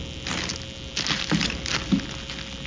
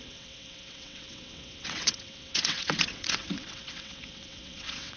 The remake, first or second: second